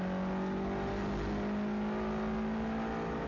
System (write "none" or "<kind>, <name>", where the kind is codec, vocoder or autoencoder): none